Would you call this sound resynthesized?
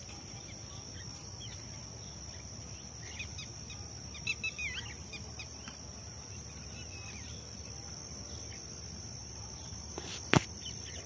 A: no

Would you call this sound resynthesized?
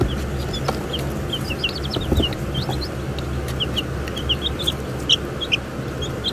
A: no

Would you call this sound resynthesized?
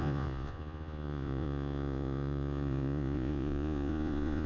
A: yes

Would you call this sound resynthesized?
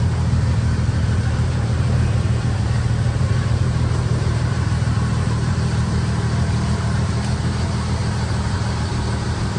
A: yes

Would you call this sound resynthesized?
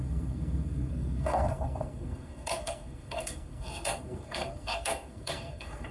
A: yes